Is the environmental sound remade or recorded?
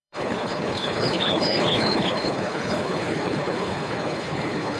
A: remade